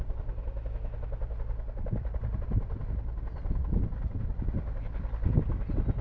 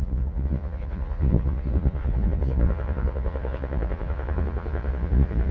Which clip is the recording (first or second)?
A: first